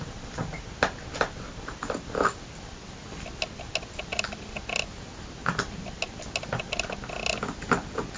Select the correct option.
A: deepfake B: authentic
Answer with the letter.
B